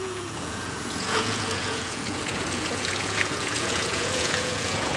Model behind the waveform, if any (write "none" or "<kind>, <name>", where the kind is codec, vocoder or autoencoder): vocoder, Vocos